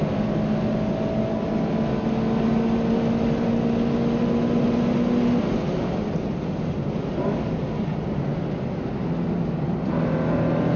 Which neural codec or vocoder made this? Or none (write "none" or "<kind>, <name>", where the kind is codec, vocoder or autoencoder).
none